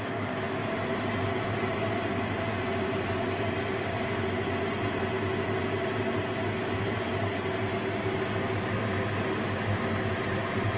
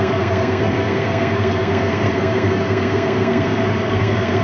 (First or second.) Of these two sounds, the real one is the first